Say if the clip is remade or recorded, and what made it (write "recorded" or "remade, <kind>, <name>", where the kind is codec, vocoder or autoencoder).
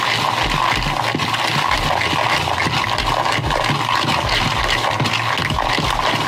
recorded